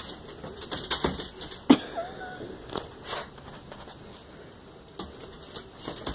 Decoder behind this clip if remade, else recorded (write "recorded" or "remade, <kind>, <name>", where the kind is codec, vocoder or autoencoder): recorded